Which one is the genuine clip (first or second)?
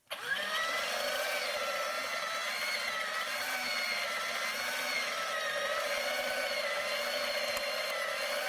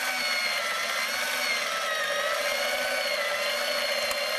second